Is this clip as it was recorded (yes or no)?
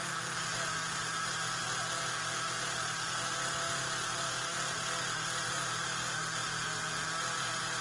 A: yes